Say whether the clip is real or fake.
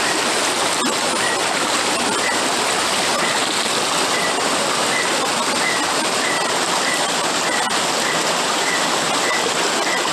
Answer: real